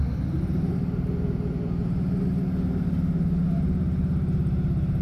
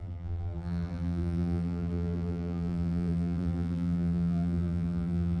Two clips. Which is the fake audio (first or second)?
second